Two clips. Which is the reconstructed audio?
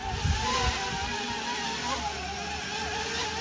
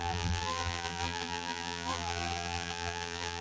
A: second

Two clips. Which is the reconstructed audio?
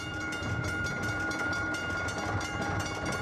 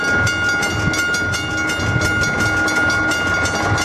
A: first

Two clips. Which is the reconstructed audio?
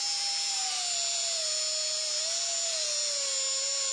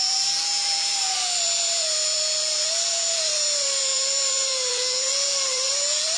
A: second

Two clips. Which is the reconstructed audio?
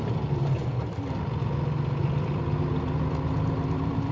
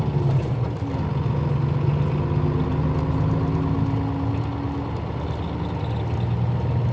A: first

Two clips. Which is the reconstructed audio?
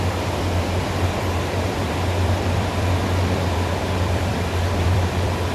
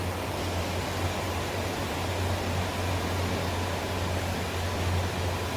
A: first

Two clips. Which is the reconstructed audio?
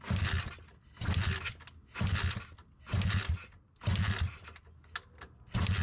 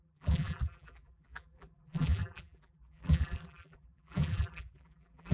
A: second